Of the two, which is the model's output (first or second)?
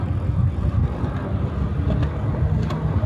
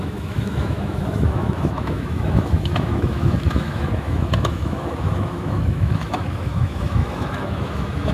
second